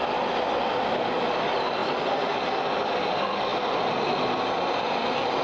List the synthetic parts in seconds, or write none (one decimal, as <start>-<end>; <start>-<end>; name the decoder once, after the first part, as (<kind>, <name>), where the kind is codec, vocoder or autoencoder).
none